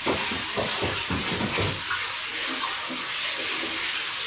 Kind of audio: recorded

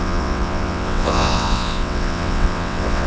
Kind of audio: remade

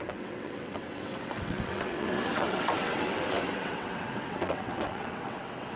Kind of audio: remade